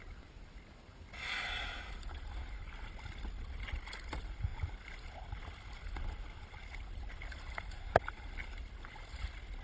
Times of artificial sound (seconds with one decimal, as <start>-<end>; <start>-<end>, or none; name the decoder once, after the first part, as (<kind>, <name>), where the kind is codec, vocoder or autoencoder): none